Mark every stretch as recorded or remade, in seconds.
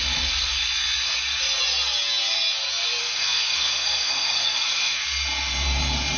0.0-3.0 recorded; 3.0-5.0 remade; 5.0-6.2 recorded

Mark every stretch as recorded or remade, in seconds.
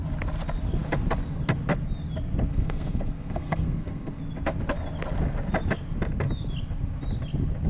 0.0-2.5 recorded; 2.5-4.2 remade; 4.2-7.7 recorded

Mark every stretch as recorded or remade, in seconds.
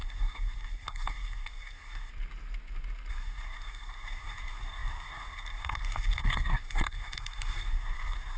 0.0-2.1 remade; 2.1-3.1 recorded; 3.1-8.4 remade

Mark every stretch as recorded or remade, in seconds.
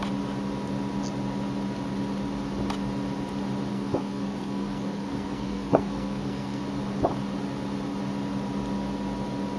0.0-3.7 recorded; 3.7-6.6 remade; 6.6-9.6 recorded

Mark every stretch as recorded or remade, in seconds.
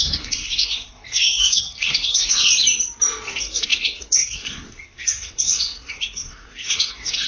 0.0-2.5 remade; 2.5-3.3 recorded; 3.3-7.3 remade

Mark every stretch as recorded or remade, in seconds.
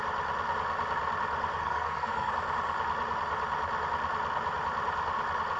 0.0-1.6 recorded; 1.6-2.3 remade; 2.3-5.6 recorded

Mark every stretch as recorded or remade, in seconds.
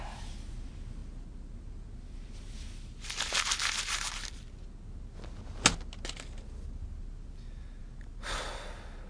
0.0-9.1 recorded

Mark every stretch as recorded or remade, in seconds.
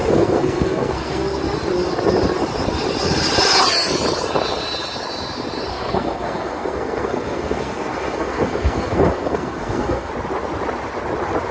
0.0-1.4 remade; 1.4-5.7 recorded; 5.7-10.1 remade; 10.1-11.5 recorded